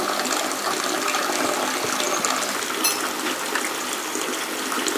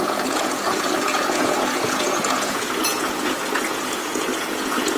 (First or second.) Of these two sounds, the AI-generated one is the second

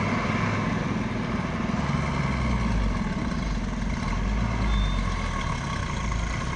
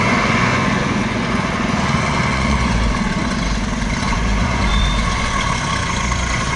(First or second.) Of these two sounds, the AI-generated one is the second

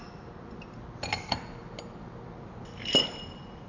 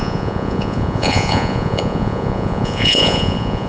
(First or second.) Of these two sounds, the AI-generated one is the second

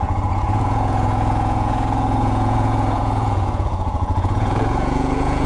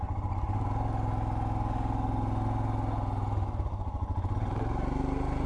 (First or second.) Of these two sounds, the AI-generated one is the first